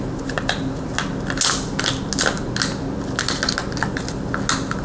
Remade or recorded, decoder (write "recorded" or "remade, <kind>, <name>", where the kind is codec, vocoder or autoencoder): recorded